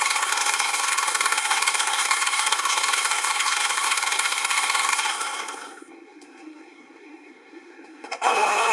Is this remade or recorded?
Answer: remade